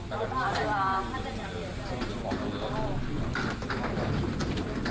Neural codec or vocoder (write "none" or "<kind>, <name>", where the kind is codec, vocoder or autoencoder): none